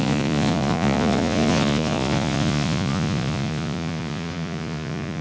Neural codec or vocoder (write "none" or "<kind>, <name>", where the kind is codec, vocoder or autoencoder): vocoder, Vocos